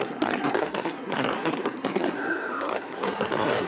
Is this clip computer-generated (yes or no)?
yes